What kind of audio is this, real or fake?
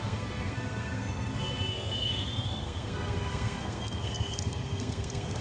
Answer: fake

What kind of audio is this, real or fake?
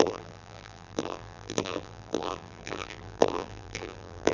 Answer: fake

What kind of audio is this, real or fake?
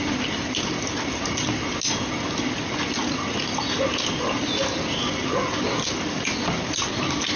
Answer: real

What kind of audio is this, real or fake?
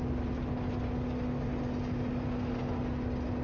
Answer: real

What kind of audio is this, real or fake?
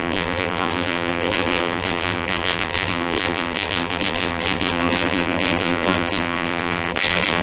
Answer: fake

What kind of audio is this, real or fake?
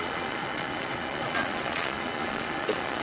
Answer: fake